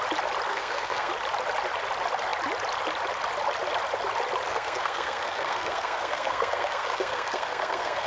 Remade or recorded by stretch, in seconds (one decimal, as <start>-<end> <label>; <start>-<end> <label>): 0.0-0.5 recorded; 0.5-1.1 remade; 1.1-4.5 recorded; 4.5-8.1 remade